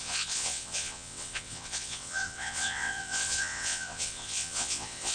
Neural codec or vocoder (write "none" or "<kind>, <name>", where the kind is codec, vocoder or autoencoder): vocoder, WaveNeXt